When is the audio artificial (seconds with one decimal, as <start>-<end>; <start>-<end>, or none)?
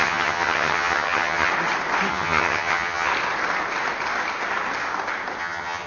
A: 0.0-1.5; 2.1-3.1; 5.4-5.9